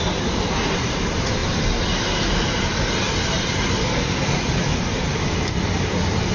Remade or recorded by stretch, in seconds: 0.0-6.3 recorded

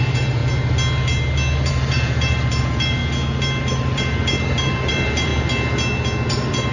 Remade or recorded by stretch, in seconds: 0.0-0.4 remade; 0.4-1.7 recorded; 1.7-3.0 remade; 3.0-3.6 recorded; 3.6-5.3 remade; 5.3-6.3 recorded; 6.3-6.7 remade

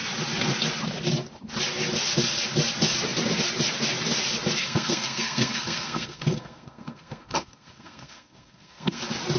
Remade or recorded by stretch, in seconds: 0.0-4.6 recorded; 4.6-9.0 remade; 9.0-9.4 recorded

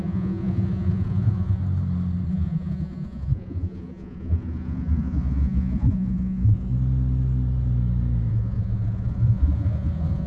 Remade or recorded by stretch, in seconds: 0.0-1.6 remade; 1.6-2.3 recorded; 2.3-6.7 remade; 6.7-8.3 recorded; 8.3-10.3 remade

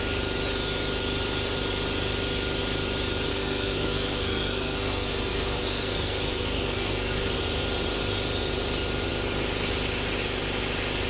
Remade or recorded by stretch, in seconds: 0.0-3.3 recorded; 3.3-7.4 remade; 7.4-11.1 recorded

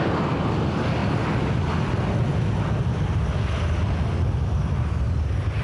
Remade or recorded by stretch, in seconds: 0.0-5.6 recorded

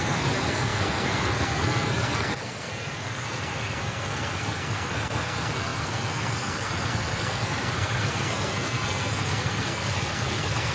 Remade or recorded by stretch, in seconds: 0.0-10.7 remade